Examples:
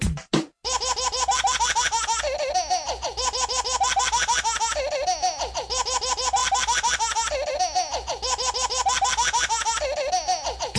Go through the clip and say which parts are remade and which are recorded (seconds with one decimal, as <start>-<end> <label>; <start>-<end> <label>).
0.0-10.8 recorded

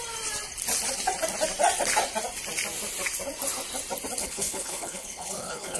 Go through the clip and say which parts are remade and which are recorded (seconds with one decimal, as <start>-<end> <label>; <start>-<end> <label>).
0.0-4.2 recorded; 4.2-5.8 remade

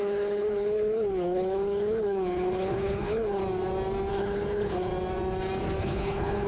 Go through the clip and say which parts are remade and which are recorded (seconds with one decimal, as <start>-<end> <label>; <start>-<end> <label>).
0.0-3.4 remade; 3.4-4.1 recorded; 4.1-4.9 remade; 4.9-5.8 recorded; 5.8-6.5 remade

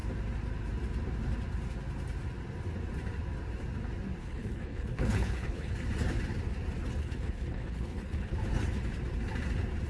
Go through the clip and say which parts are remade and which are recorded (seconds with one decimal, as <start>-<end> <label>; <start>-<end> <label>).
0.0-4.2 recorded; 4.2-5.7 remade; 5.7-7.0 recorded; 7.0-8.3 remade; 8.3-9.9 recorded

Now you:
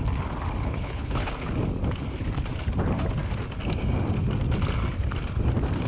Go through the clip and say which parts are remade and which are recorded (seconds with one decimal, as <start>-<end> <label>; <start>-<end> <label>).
0.0-0.6 recorded; 0.6-1.3 remade; 1.3-5.9 recorded